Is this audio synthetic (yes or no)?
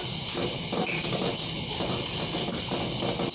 no